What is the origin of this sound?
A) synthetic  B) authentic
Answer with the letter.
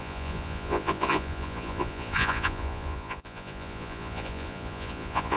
A